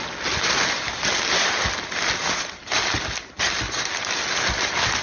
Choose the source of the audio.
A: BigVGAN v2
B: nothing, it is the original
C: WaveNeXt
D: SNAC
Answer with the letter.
B